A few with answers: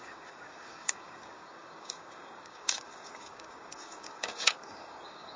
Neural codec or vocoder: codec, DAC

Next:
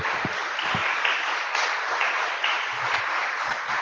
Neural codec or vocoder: none